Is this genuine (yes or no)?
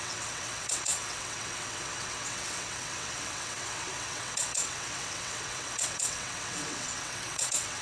no